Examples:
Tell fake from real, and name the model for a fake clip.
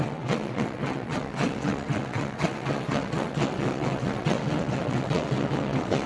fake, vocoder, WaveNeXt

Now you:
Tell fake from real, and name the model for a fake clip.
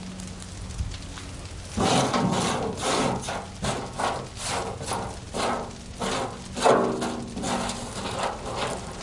real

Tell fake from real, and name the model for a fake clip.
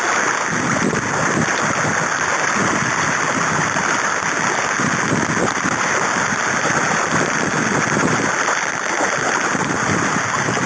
real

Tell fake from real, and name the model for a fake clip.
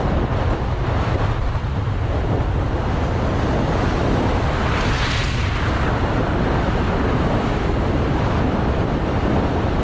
real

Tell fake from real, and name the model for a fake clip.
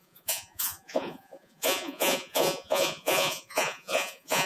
fake, vocoder, Vocos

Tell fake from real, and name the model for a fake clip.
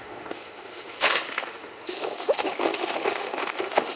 fake, autoencoder, DAC-VAE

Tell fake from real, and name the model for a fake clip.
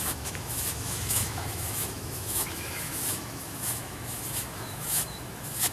fake, autoencoder, DAC-VAE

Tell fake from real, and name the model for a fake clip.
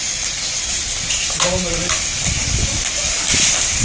real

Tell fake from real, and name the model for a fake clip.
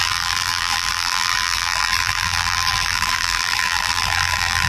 fake, vocoder, BigVGAN v2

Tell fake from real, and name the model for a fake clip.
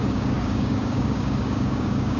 fake, codec, DAC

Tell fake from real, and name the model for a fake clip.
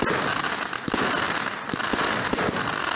real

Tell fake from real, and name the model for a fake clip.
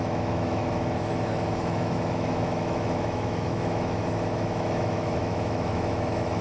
fake, autoencoder, DAC-VAE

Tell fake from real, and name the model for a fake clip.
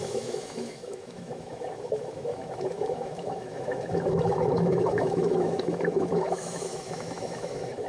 fake, autoencoder, DAC-VAE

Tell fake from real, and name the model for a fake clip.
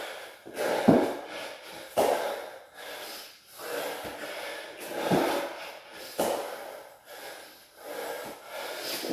real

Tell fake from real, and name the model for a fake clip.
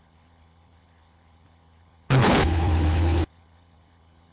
fake, codec, HILCodec